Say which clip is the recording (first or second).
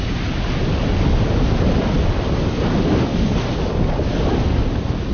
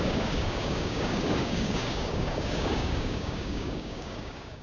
first